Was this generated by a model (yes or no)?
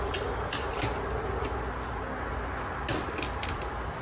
no